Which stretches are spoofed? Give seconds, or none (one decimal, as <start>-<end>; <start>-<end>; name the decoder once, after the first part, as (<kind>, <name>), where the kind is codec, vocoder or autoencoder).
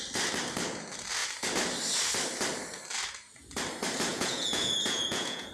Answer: 4.1-5.5 (vocoder, Vocos)